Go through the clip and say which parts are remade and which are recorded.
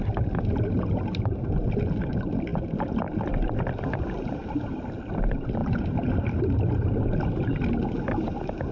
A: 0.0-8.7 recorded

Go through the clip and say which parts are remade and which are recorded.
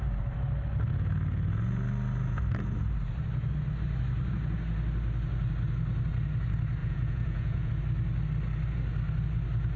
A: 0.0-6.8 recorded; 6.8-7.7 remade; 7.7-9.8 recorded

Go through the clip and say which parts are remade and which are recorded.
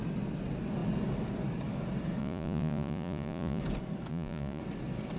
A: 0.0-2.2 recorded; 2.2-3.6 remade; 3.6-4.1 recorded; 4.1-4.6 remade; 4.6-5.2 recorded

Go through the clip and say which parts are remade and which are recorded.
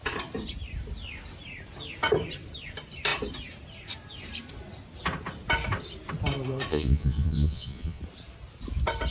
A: 0.0-6.7 recorded; 6.7-8.0 remade; 8.0-9.1 recorded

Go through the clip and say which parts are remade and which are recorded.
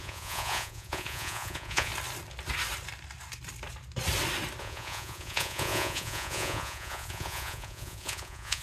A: 0.0-1.9 remade; 1.9-4.6 recorded; 4.6-8.6 remade